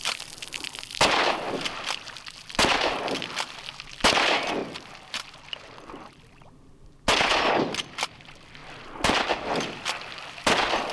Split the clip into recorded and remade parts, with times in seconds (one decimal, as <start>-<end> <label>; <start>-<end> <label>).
0.0-10.9 recorded